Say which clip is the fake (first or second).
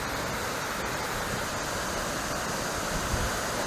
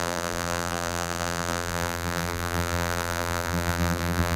second